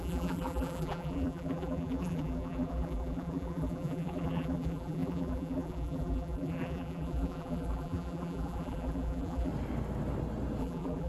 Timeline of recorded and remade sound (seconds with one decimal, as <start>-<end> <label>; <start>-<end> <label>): 0.0-9.5 remade; 9.5-10.6 recorded; 10.6-11.1 remade

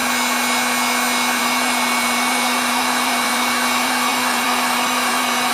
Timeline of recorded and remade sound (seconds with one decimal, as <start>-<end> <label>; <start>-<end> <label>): 0.0-1.4 recorded; 1.4-5.5 remade

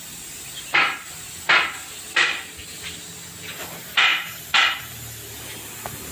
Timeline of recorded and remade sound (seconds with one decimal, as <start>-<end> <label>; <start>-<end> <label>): 0.0-4.1 recorded; 4.1-4.8 remade; 4.8-6.1 recorded

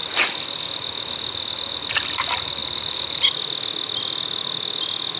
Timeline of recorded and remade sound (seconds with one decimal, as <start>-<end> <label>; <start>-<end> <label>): 0.0-0.6 remade; 0.6-5.2 recorded

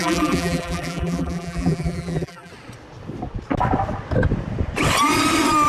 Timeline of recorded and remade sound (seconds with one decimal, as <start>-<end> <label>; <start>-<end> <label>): 0.0-2.5 remade; 2.5-5.7 recorded

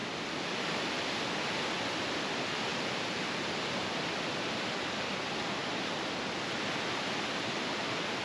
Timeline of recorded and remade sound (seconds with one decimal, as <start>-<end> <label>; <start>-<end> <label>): 0.0-0.9 recorded; 0.9-8.2 remade

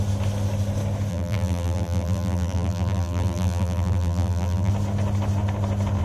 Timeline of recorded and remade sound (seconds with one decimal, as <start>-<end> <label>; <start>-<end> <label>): 0.0-1.1 recorded; 1.1-4.7 remade; 4.7-6.0 recorded

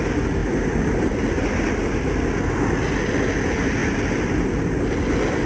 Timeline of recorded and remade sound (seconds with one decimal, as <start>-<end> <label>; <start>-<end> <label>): 0.0-0.4 recorded; 0.4-3.3 remade; 3.3-3.8 recorded; 3.8-4.8 remade; 4.8-5.5 recorded